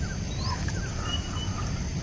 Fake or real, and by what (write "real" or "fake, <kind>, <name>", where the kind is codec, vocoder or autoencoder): real